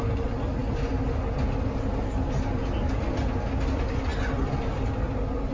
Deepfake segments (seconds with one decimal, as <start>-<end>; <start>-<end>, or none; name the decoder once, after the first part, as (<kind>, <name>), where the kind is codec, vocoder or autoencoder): none